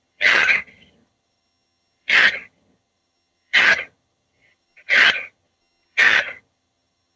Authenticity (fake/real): fake